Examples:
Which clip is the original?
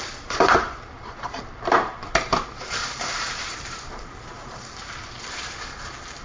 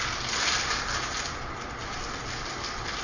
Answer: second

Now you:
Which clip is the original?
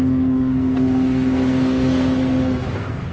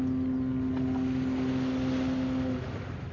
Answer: second